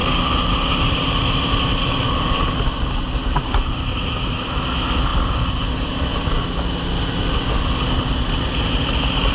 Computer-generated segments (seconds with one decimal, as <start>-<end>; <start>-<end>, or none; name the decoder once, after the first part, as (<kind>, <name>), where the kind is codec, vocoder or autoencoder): 3.2-4.6 (vocoder, BigVGAN v2)